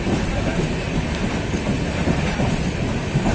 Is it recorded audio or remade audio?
recorded